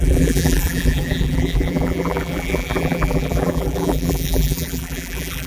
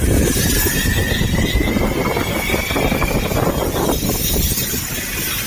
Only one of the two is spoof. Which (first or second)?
first